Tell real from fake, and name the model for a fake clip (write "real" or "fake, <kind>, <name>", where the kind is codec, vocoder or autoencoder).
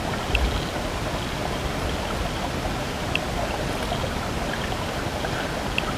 real